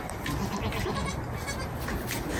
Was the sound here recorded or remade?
recorded